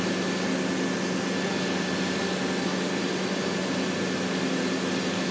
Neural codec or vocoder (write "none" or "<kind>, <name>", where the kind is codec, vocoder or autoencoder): none